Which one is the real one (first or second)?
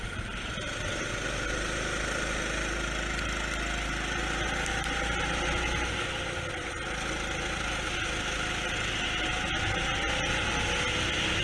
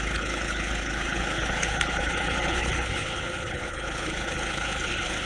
first